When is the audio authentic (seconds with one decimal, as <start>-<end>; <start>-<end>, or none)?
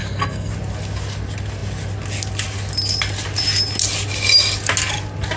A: 0.5-5.4